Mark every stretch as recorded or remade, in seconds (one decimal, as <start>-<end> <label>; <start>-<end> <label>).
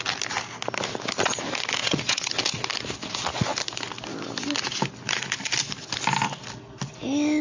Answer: 0.0-1.8 recorded; 1.8-2.3 remade; 2.3-7.4 recorded